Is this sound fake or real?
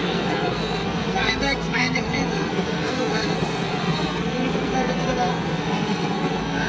fake